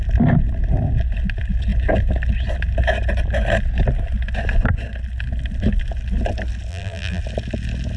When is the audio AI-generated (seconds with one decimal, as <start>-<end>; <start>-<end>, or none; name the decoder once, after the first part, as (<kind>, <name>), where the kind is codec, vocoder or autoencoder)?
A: 6.7-7.2 (vocoder, BigVGAN v2)